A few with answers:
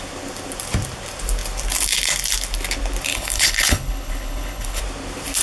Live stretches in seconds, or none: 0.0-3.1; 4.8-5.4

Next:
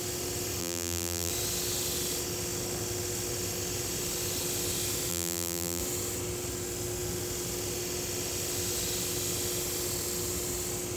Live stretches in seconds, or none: 0.0-0.6; 1.3-5.1; 5.8-11.0

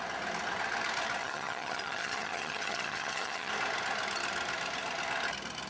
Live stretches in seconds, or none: 0.0-1.2; 3.5-5.7

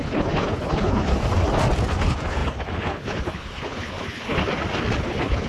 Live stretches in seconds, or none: 1.1-2.0; 4.4-5.0

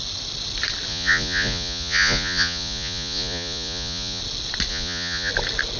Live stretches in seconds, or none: 0.0-0.9; 4.2-4.7; 5.3-5.8

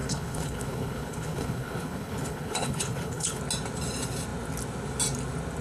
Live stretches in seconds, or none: 3.4-5.6

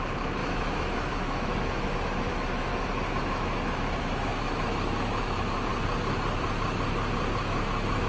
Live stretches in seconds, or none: 2.7-3.2; 5.7-7.4

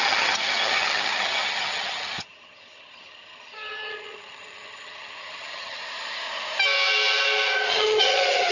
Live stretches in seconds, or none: 5.8-7.7